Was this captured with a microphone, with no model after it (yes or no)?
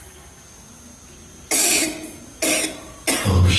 yes